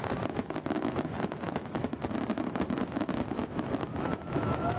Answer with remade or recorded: remade